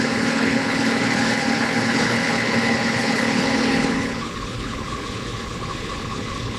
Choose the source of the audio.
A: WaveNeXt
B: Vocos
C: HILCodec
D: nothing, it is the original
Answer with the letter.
C